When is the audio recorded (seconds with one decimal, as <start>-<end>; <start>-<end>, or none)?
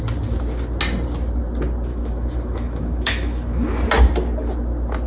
0.0-1.9; 3.7-5.1